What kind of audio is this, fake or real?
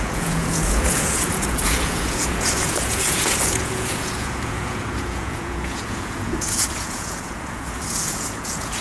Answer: fake